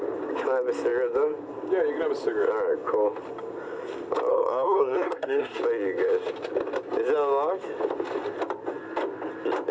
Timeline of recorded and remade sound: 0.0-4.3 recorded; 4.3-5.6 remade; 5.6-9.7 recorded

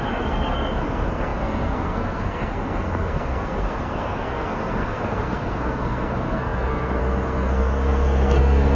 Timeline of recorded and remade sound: 0.0-8.8 remade

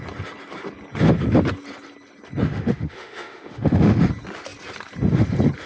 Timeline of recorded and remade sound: 0.0-2.5 recorded; 2.5-4.0 remade; 4.0-5.7 recorded

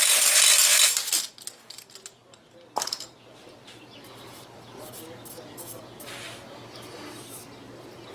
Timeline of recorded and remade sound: 0.0-8.1 recorded

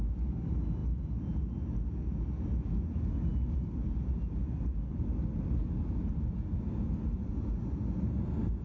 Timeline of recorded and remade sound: 0.0-3.3 recorded; 3.3-4.1 remade; 4.1-4.9 recorded; 4.9-7.3 remade; 7.3-8.6 recorded

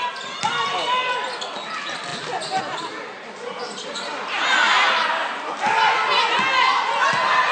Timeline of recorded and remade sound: 0.0-7.5 recorded

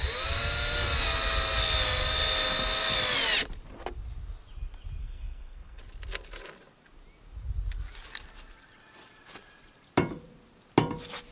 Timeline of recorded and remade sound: 0.0-5.0 recorded; 5.0-5.8 remade; 5.8-11.3 recorded

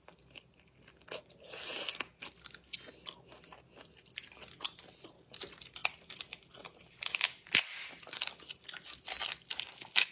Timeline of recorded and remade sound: 0.0-10.1 recorded